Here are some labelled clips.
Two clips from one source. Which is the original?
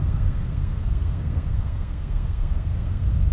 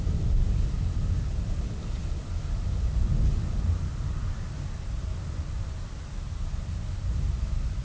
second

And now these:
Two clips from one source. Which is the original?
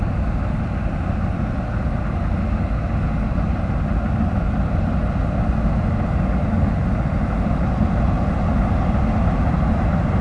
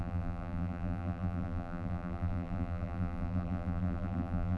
first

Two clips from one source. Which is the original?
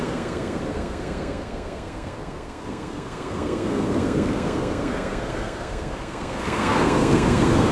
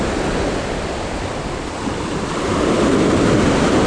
second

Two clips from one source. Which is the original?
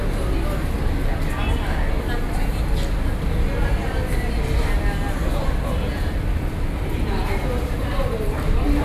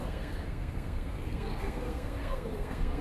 first